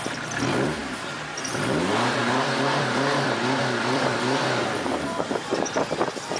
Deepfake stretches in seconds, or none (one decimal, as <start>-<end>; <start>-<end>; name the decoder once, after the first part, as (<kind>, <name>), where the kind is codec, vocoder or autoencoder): 0.0-0.8 (vocoder, BigVGAN v2); 1.5-6.4